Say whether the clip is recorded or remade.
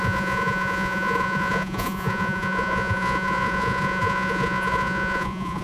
remade